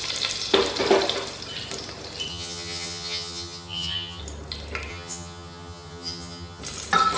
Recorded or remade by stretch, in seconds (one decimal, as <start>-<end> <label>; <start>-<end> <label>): 0.0-2.3 recorded; 2.3-4.2 remade; 4.2-4.9 recorded; 4.9-6.6 remade; 6.6-7.2 recorded